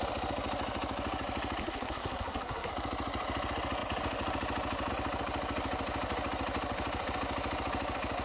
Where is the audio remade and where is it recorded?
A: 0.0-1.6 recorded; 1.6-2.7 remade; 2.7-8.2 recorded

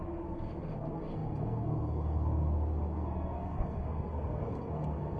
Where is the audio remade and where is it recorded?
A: 0.0-5.2 remade

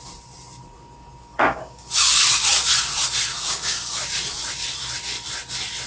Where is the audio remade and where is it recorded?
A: 0.0-1.3 recorded; 1.3-2.2 remade; 2.2-3.3 recorded; 3.3-4.0 remade; 4.0-5.9 recorded

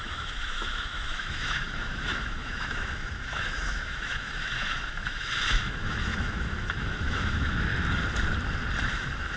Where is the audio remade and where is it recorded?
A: 0.0-7.7 remade; 7.7-8.9 recorded; 8.9-9.4 remade

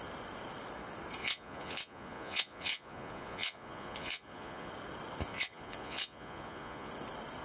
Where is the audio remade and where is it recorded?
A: 0.0-1.2 recorded; 1.2-4.7 remade; 4.7-5.3 recorded; 5.3-6.9 remade; 6.9-7.4 recorded